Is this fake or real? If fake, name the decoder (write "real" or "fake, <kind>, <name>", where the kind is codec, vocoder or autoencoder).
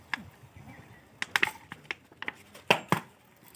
real